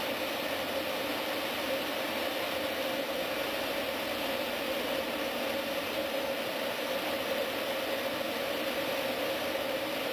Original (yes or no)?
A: yes